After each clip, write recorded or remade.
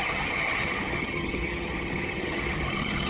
remade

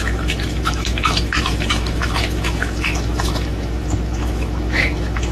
remade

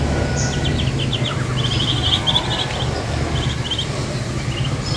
recorded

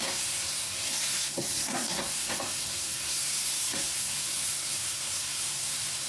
remade